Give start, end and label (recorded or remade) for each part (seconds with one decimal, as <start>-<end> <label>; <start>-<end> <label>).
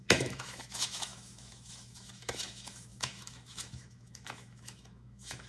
0.0-5.5 remade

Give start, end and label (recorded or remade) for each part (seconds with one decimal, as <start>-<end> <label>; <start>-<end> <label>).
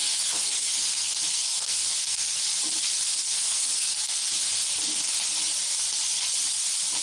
0.0-2.4 remade; 2.4-3.2 recorded; 3.2-4.3 remade; 4.3-7.0 recorded